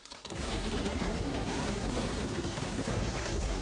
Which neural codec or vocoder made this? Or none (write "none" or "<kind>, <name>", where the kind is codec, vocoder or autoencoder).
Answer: codec, SNAC